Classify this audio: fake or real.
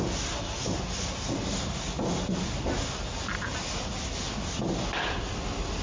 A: real